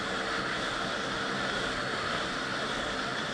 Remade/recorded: recorded